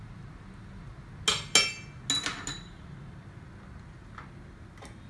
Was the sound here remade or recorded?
recorded